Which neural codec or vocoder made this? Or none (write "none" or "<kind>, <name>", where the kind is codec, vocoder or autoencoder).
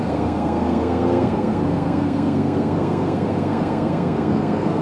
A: codec, SNAC